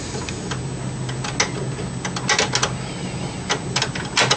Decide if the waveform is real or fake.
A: real